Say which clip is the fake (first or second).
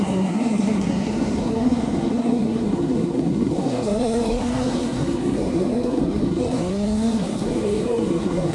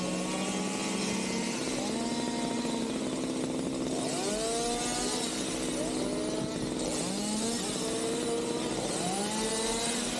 first